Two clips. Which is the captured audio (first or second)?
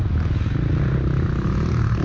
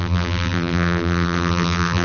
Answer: first